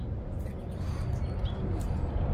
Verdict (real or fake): fake